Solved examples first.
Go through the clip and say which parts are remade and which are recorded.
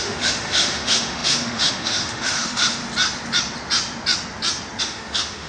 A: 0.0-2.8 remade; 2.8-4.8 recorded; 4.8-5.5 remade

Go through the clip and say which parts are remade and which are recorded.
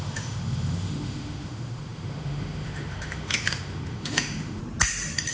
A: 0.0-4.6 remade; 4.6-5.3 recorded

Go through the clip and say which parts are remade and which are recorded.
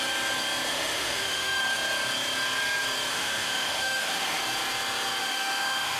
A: 0.0-0.7 recorded; 0.7-1.6 remade; 1.6-3.1 recorded; 3.1-4.4 remade; 4.4-5.2 recorded; 5.2-6.0 remade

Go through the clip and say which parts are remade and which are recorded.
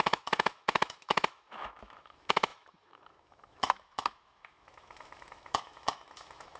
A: 0.0-6.6 remade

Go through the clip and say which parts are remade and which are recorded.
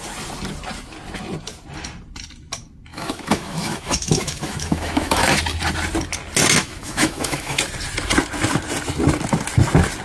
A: 0.0-2.9 recorded; 2.9-5.4 remade; 5.4-6.6 recorded; 6.6-7.6 remade; 7.6-10.0 recorded